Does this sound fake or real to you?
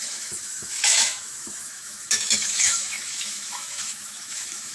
fake